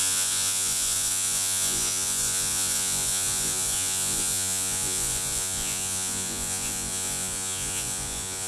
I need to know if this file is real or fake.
fake